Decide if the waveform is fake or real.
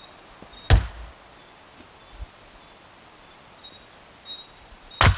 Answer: real